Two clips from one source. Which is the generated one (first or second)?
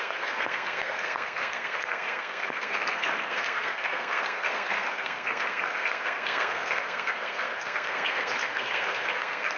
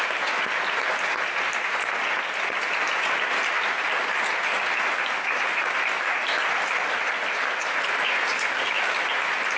first